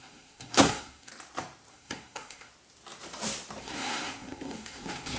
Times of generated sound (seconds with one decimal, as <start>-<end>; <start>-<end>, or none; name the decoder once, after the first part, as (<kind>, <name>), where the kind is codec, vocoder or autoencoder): 0.0-1.1 (codec, SNAC); 1.7-2.5; 3.6-5.2